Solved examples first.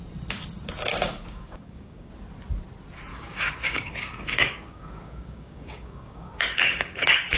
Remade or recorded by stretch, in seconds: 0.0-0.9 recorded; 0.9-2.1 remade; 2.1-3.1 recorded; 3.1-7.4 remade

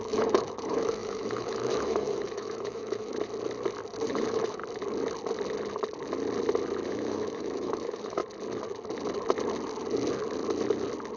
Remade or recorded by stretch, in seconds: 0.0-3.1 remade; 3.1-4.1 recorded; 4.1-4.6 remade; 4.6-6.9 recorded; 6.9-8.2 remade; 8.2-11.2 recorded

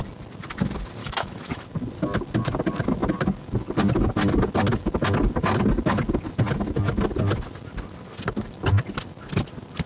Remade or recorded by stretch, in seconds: 0.0-1.0 recorded; 1.0-1.6 remade; 1.6-9.9 recorded

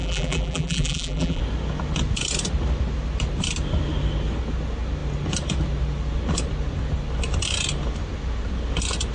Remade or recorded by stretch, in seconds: 0.0-1.4 remade; 1.4-9.1 recorded

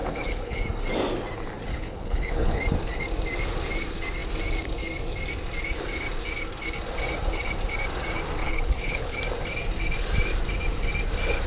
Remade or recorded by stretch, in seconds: 0.0-0.6 remade; 0.6-1.7 recorded; 1.7-2.6 remade; 2.6-8.4 recorded; 8.4-9.2 remade; 9.2-11.5 recorded

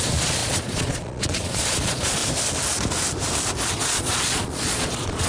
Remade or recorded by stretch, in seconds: 0.0-2.2 remade; 2.2-3.7 recorded; 3.7-5.3 remade